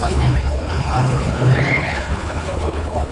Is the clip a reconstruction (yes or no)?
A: yes